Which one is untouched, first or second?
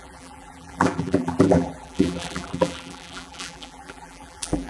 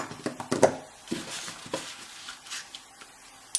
second